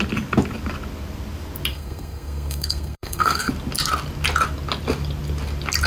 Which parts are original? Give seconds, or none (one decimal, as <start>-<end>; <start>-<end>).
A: 0.0-1.7; 3.5-5.9